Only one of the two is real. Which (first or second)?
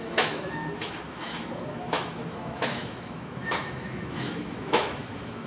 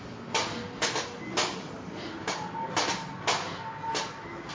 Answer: second